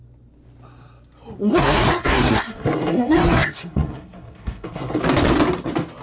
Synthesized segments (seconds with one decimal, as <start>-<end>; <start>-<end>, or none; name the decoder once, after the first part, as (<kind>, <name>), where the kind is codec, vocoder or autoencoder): 1.4-5.0 (codec, SNAC)